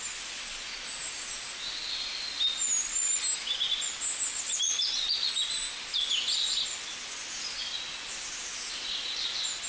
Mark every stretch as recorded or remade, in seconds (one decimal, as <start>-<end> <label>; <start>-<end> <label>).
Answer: 0.0-9.7 recorded